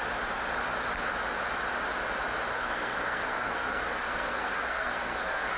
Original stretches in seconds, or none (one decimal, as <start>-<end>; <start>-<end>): 0.0-2.5